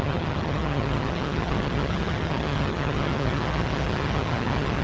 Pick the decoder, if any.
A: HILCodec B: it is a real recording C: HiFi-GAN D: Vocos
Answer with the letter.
C